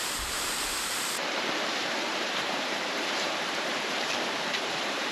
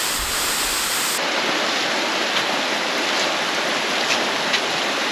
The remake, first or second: first